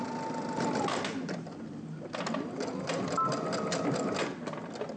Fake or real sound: real